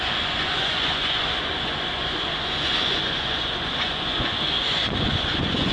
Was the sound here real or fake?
fake